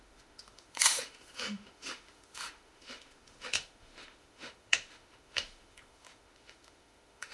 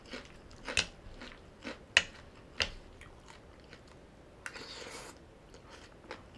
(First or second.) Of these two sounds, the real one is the second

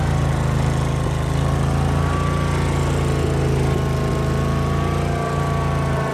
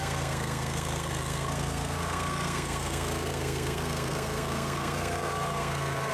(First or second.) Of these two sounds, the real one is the first